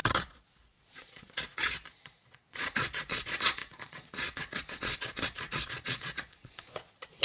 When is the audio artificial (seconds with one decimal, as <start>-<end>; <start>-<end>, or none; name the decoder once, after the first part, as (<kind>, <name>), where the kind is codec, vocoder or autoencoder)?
0.0-7.2 (vocoder, Vocos)